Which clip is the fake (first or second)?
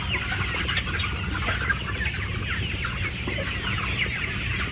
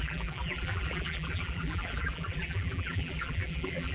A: second